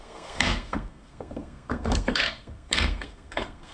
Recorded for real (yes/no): no